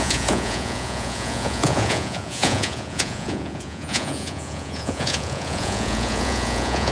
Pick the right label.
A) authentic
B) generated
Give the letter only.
B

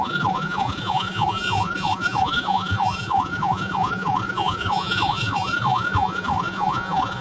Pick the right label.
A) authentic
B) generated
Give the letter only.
B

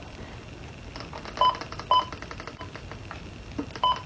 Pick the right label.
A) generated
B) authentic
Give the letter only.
B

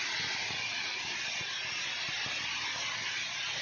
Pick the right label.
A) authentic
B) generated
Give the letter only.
A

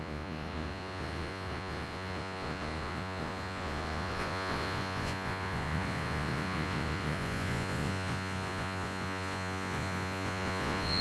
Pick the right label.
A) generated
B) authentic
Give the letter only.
A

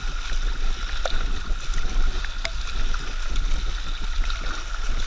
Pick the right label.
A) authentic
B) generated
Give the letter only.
A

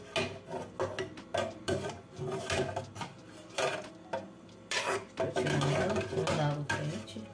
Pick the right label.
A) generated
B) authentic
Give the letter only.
B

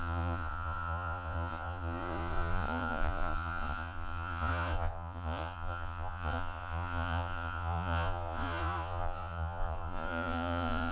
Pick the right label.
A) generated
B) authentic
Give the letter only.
A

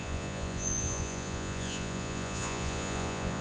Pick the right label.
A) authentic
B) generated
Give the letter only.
B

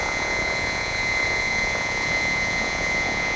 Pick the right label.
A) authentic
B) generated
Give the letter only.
B